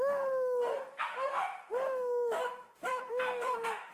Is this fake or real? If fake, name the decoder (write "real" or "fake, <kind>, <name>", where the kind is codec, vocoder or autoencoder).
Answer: fake, autoencoder, DAC-VAE